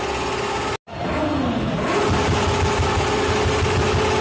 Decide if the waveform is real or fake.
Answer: real